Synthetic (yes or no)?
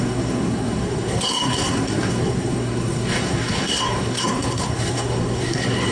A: yes